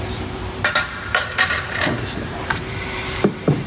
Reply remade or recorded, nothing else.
remade